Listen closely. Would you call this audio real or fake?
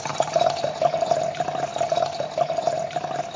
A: real